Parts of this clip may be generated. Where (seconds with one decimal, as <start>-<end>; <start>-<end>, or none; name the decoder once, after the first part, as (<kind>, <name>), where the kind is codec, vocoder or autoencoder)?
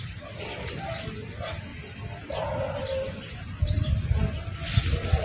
none